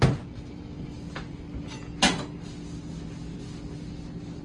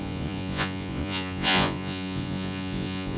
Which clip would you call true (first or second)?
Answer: first